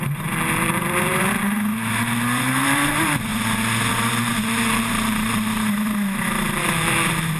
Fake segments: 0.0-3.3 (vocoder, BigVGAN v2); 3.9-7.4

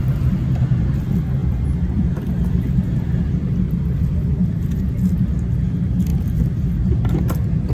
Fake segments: 1.4-4.7 (vocoder, BigVGAN v2); 6.1-6.9

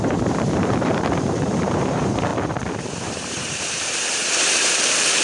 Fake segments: 0.0-2.3 (vocoder, BigVGAN v2); 2.8-5.2

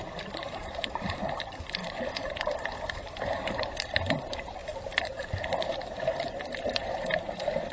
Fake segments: 0.0-4.6 (vocoder, BigVGAN v2); 5.5-7.7

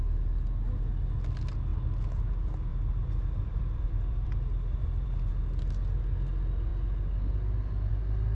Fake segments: 2.7-5.3 (vocoder, BigVGAN v2)

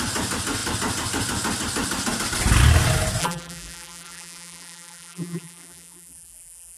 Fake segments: 3.2-6.8 (vocoder, BigVGAN v2)

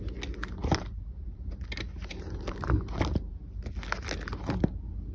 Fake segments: 0.6-3.7 (vocoder, BigVGAN v2)

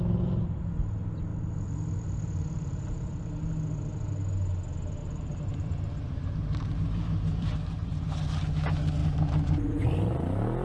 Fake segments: 1.3-3.4 (vocoder, BigVGAN v2); 5.0-8.3